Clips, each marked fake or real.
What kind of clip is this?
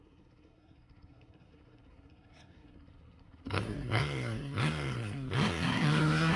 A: fake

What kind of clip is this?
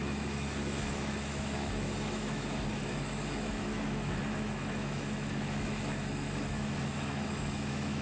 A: fake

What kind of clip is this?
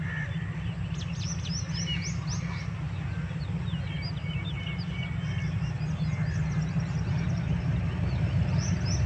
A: real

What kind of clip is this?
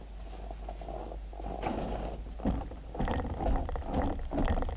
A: real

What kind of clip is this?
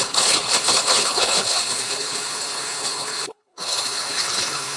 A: fake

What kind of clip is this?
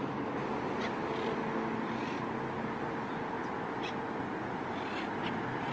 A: real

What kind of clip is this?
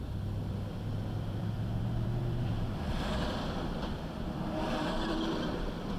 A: fake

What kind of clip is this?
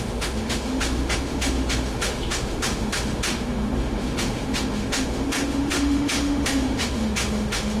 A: fake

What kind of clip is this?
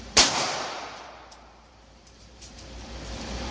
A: fake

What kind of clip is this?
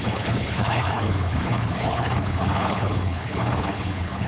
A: fake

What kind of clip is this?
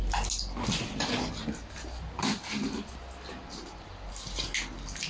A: real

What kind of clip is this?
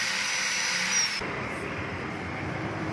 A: real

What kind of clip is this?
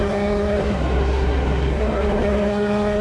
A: fake